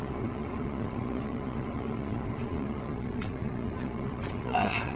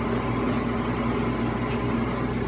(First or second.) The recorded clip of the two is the second